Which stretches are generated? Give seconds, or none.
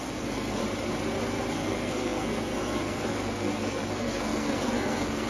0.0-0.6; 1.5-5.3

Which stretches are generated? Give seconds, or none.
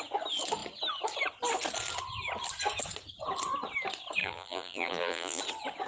4.2-5.4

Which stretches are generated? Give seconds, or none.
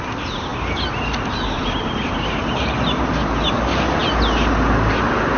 none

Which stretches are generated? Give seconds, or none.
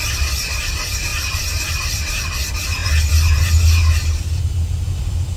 1.1-1.8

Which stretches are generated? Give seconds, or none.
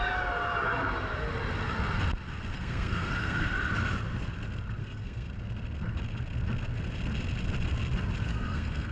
2.5-3.5; 4.8-5.3; 8.3-8.9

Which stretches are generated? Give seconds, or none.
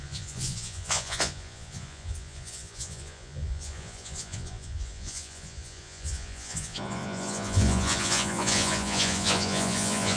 0.0-10.2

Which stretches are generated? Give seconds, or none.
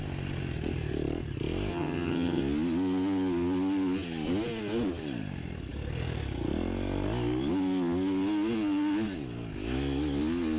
1.7-2.4